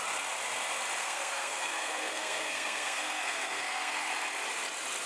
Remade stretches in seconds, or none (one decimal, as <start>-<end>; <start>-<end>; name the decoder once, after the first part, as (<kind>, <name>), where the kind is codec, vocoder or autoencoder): 1.0-4.1 (codec, SNAC)